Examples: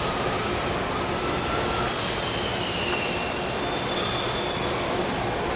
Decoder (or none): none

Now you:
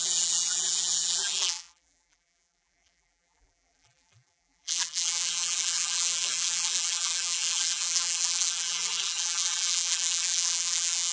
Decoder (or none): vocoder, BigVGAN v2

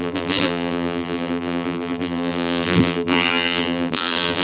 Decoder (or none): vocoder, BigVGAN v2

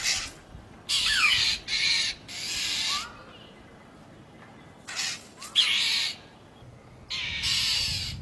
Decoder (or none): none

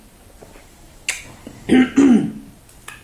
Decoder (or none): none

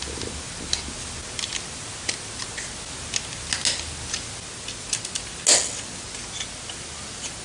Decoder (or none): none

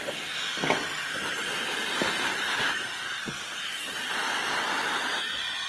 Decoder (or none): none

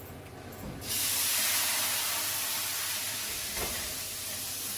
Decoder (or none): vocoder, BigVGAN v2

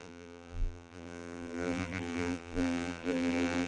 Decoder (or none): vocoder, BigVGAN v2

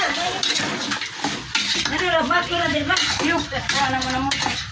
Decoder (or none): vocoder, BigVGAN v2